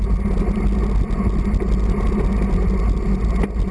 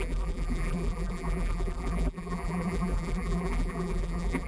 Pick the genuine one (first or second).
first